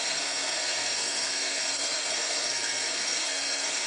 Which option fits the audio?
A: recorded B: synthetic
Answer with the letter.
B